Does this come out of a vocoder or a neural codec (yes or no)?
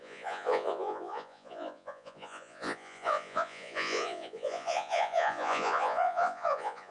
yes